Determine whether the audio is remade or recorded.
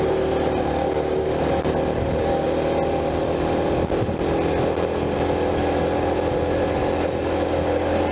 recorded